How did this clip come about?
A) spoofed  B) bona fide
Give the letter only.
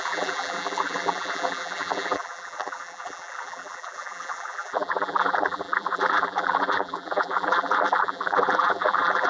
A